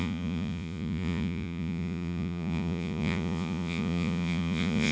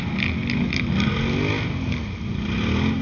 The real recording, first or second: second